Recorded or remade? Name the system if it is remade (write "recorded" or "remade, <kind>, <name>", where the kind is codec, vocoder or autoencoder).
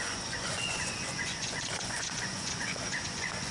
remade, vocoder, Vocos